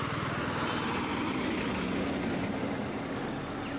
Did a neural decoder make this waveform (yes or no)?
no